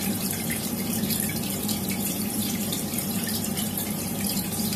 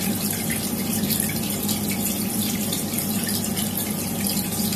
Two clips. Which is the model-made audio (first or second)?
first